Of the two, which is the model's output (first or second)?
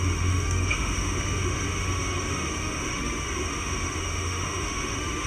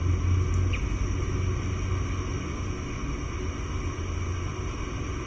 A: first